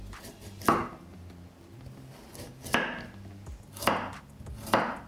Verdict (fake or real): real